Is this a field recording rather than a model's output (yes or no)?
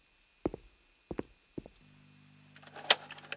yes